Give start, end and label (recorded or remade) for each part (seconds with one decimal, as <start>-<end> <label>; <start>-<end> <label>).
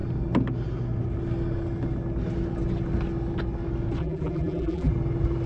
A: 0.0-4.0 recorded; 4.0-4.9 remade; 4.9-5.5 recorded